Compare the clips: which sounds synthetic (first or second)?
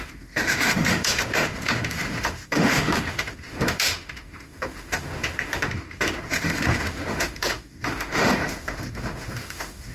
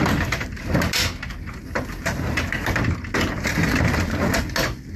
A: first